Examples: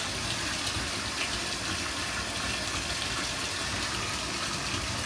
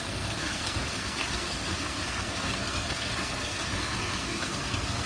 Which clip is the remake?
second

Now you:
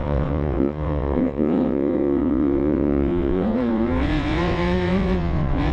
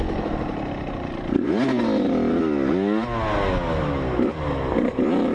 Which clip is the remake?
first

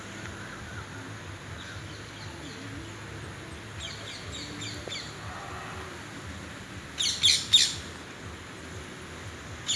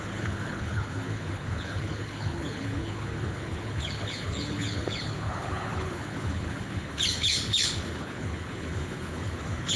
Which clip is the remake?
second